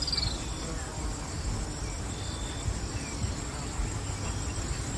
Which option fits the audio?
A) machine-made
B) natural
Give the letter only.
B